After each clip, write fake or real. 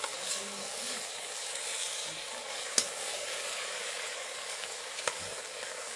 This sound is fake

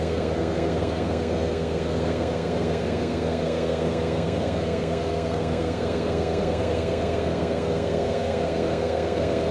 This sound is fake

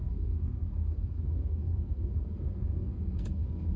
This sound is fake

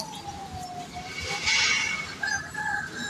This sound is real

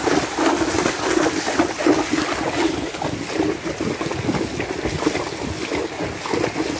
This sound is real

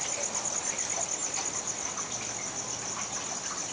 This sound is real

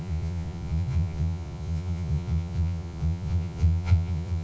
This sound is fake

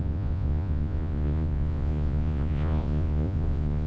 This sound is fake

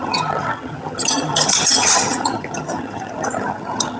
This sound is fake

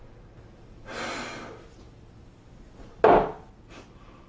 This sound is real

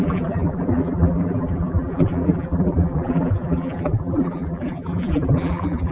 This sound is fake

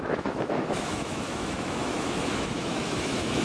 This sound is fake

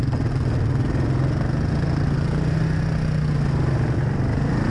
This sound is real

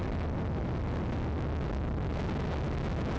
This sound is real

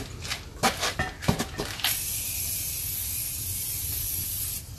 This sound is real